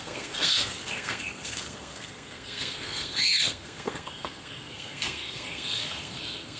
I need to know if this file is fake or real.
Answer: fake